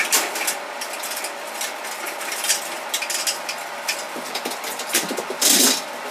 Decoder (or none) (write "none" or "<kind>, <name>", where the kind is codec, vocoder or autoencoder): none